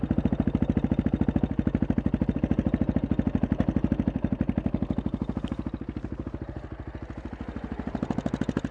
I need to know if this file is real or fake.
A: real